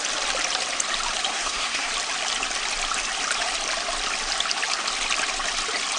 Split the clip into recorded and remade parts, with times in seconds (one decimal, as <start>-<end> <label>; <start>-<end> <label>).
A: 0.0-1.3 recorded; 1.3-1.9 remade; 1.9-6.0 recorded